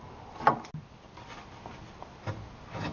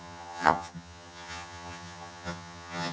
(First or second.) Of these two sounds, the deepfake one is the second